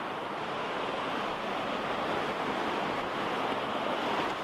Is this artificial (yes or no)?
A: no